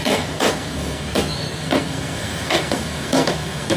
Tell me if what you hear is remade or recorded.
remade